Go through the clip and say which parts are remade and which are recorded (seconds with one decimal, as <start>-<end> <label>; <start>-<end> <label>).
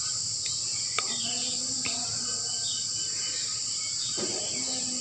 0.0-5.0 recorded